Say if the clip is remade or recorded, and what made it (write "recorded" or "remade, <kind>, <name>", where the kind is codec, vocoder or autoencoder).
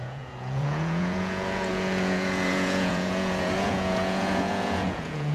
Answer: remade, vocoder, Vocos